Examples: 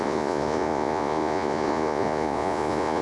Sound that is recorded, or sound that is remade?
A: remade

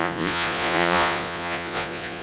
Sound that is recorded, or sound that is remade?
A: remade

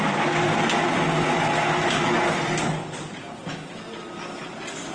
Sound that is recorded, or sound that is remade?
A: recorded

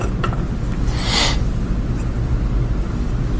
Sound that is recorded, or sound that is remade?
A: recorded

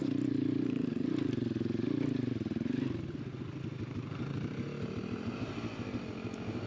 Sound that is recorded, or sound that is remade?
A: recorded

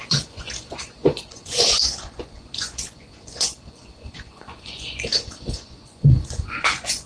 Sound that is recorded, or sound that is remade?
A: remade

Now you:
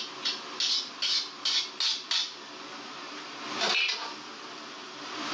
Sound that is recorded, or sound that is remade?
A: recorded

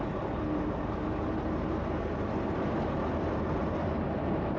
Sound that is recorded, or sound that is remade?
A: recorded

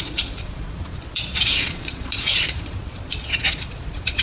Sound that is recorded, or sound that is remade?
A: remade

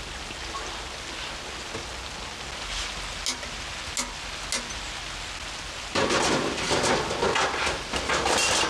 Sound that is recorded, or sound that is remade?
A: recorded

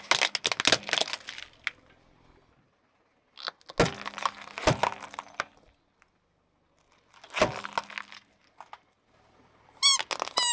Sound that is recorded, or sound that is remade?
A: recorded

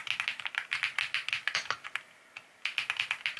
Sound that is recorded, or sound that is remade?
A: recorded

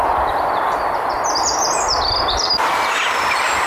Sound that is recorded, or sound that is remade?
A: recorded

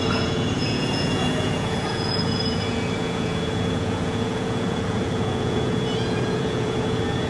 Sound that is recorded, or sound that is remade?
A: remade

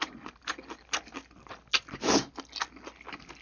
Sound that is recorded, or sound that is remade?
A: recorded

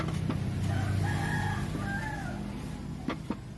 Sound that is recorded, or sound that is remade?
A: recorded